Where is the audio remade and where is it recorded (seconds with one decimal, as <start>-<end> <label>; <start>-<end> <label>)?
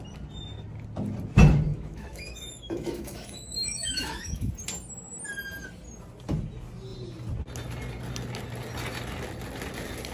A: 0.0-1.7 recorded; 1.7-4.5 remade; 4.5-10.1 recorded